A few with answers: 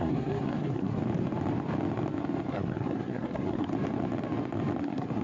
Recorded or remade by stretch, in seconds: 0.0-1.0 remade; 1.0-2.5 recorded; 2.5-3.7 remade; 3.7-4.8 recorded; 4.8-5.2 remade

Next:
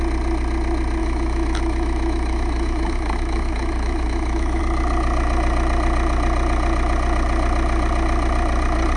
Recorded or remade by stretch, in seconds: 0.0-1.0 recorded; 1.0-4.6 remade; 4.6-9.0 recorded

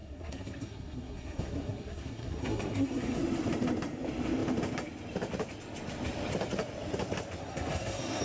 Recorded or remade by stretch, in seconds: 0.0-3.2 remade; 3.2-7.4 recorded; 7.4-8.2 remade

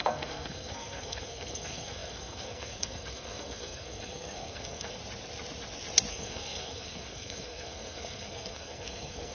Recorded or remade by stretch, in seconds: 0.0-5.0 remade; 5.0-6.1 recorded; 6.1-9.3 remade

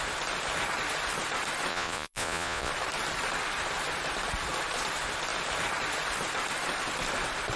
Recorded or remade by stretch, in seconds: 0.0-1.7 recorded; 1.7-2.7 remade; 2.7-7.6 recorded

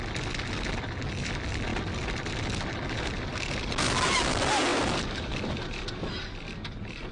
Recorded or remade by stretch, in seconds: 0.0-1.7 recorded; 1.7-3.3 remade; 3.3-4.7 recorded; 4.7-5.8 remade; 5.8-7.1 recorded

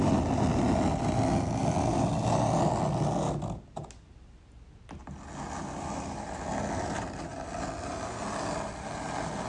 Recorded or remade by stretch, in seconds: 0.0-9.5 recorded